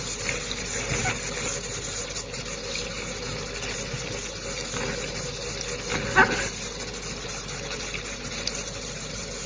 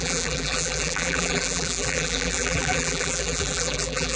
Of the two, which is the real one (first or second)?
first